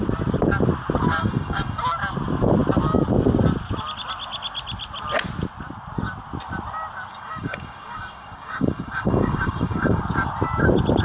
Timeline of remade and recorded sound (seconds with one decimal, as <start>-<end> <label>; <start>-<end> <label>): 0.0-1.2 recorded; 1.2-1.8 remade; 1.8-7.1 recorded; 7.1-10.0 remade; 10.0-11.0 recorded

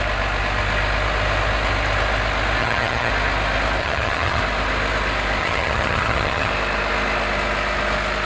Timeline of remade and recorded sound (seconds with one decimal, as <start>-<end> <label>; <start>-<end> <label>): 0.0-2.6 recorded; 2.6-3.1 remade; 3.1-3.8 recorded; 3.8-4.4 remade; 4.4-5.4 recorded; 5.4-6.5 remade; 6.5-8.3 recorded